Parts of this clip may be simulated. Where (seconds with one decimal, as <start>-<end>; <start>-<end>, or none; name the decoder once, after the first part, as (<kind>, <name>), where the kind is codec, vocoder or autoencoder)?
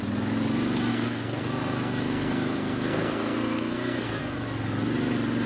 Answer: 0.9-4.2 (codec, SNAC)